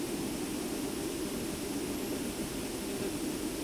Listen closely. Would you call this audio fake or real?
real